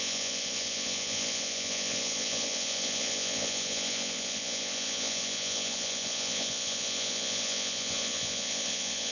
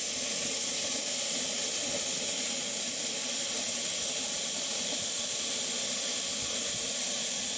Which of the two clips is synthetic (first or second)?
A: first